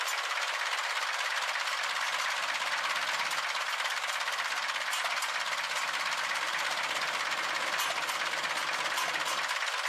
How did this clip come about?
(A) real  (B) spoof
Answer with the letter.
A